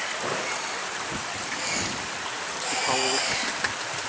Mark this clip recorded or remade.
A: recorded